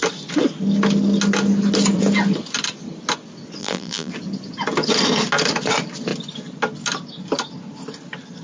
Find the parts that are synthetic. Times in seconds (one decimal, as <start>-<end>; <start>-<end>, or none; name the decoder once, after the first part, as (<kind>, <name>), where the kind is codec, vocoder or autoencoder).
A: 3.6-4.1 (vocoder, BigVGAN v2)